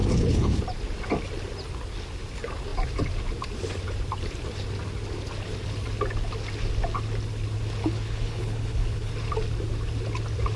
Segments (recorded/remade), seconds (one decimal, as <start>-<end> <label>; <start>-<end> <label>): 0.0-0.6 remade; 0.6-7.8 recorded; 7.8-9.1 remade; 9.1-10.6 recorded